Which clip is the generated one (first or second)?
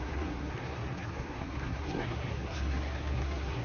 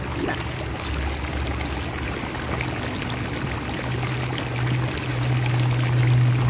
first